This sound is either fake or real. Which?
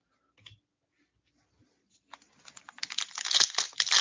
real